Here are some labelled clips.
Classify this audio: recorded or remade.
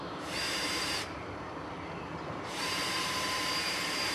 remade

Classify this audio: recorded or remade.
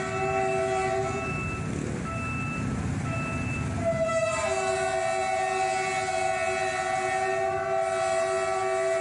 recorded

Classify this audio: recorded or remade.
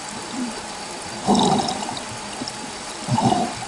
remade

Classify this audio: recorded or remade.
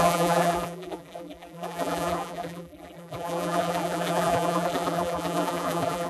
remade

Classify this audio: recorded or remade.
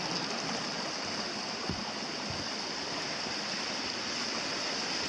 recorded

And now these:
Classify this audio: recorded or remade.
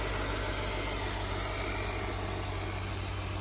recorded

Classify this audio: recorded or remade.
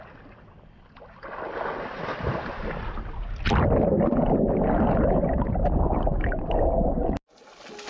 recorded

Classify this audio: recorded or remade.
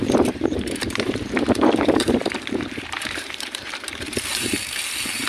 remade